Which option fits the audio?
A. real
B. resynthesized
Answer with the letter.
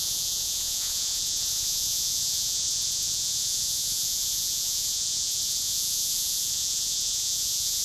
B